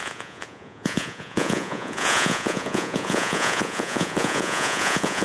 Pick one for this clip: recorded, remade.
remade